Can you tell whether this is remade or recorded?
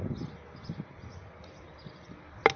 recorded